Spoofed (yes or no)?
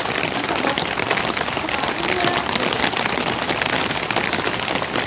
no